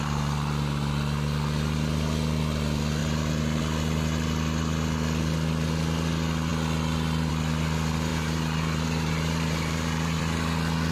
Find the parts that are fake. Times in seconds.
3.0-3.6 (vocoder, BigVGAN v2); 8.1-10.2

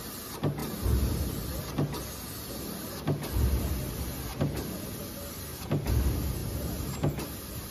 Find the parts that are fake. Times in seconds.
4.3-4.9 (vocoder, BigVGAN v2); 6.4-6.9

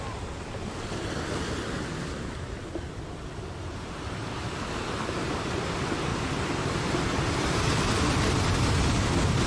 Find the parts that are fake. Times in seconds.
1.9-2.5 (vocoder, BigVGAN v2); 6.1-6.8

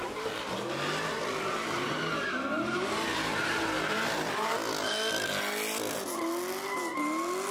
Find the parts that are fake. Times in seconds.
3.1-3.9 (vocoder, BigVGAN v2)